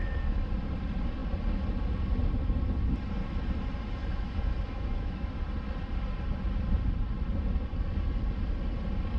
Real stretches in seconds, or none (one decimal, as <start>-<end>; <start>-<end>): 0.5-4.0; 5.3-9.2